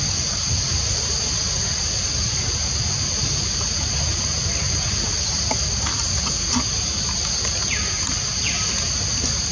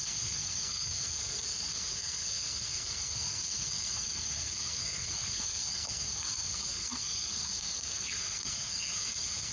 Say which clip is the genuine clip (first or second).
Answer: first